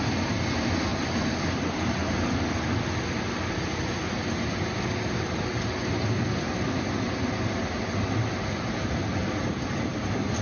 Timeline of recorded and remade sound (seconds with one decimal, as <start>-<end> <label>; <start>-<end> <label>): 0.0-0.9 recorded; 0.9-1.4 remade; 1.4-10.4 recorded